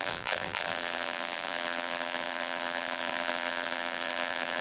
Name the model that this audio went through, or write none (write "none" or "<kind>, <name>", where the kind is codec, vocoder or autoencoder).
vocoder, BigVGAN v2